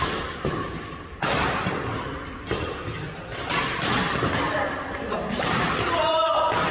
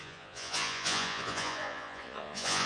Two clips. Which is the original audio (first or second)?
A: first